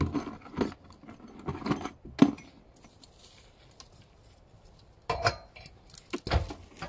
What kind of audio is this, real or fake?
real